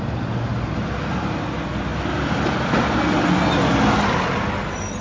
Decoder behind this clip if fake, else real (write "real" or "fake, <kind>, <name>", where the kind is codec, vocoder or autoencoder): real